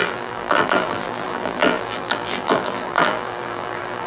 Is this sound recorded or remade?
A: remade